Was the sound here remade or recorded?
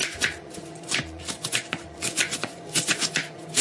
remade